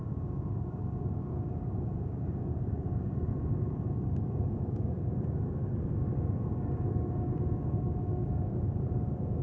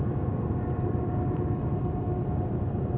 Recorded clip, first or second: second